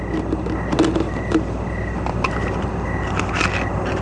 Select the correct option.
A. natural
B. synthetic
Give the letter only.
A